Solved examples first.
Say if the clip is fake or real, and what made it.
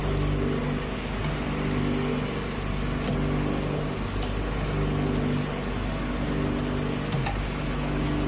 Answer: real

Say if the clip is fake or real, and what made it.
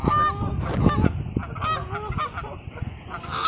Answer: real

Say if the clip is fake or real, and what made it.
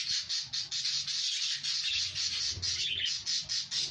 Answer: real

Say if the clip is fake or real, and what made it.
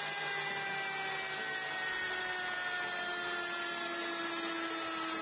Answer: real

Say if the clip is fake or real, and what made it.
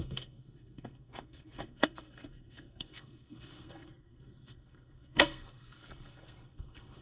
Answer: fake, codec, SNAC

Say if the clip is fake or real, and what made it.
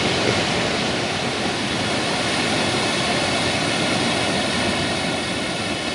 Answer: real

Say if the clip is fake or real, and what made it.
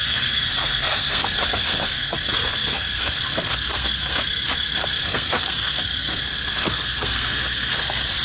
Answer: fake, codec, SNAC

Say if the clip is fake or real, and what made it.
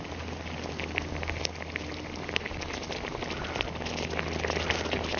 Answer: real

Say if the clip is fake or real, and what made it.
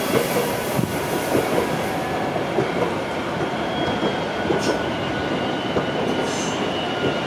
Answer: real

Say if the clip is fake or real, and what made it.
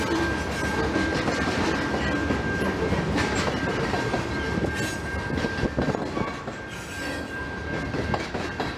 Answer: real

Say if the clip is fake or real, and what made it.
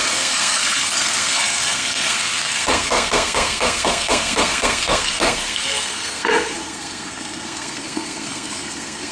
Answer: fake, codec, SNAC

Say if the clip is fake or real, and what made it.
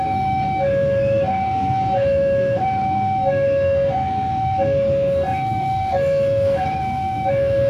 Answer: fake, codec, SNAC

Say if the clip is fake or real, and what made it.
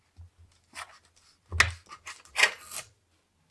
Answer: real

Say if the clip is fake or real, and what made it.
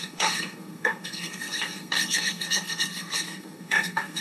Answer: fake, codec, SNAC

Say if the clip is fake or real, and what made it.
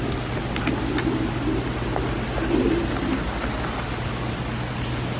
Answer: real